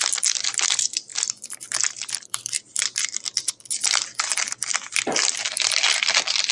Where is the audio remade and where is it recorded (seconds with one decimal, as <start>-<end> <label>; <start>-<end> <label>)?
0.0-4.1 remade; 4.1-5.5 recorded; 5.5-6.5 remade